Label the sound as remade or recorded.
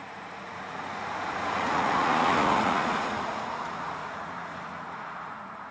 remade